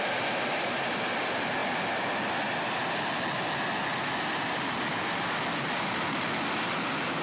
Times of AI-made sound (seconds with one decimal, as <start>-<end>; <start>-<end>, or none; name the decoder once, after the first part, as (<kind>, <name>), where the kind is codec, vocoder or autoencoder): none